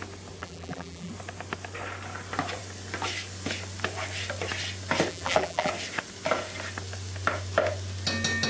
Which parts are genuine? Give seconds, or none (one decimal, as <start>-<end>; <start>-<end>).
0.0-0.4; 1.1-5.1; 5.7-8.5